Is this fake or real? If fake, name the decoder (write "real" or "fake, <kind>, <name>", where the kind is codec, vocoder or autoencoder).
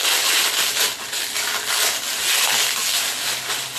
real